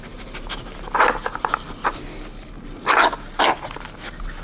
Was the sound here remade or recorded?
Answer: recorded